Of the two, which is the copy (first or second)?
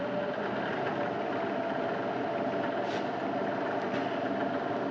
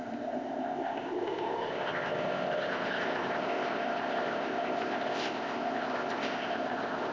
second